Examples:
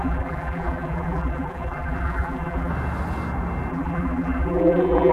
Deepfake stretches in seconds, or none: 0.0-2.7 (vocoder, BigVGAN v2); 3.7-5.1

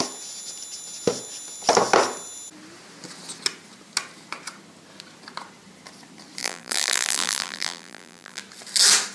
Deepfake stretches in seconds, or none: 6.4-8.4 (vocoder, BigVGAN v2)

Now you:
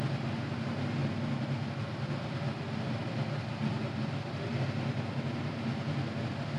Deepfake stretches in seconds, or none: none